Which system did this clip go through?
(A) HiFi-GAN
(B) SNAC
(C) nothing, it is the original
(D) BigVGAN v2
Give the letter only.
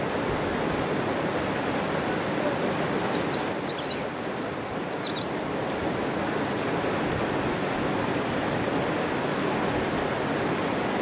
C